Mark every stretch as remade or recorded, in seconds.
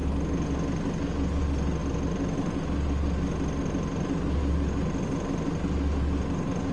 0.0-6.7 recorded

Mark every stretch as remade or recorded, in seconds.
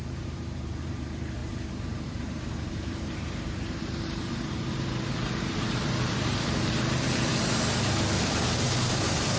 0.0-7.3 remade; 7.3-8.2 recorded; 8.2-9.4 remade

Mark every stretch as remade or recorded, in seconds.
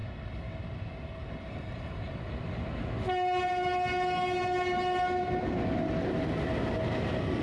0.0-7.4 recorded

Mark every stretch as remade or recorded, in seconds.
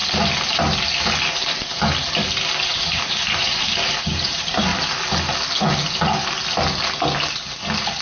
0.0-2.6 recorded; 2.6-4.7 remade; 4.7-8.0 recorded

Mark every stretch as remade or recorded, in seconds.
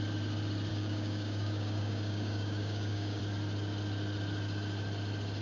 0.0-0.7 recorded; 0.7-3.2 remade; 3.2-5.4 recorded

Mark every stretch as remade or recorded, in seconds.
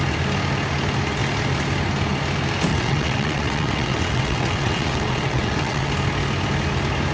0.0-2.7 recorded; 2.7-5.9 remade; 5.9-7.1 recorded